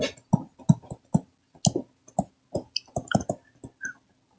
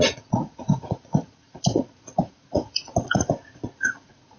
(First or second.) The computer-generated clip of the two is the second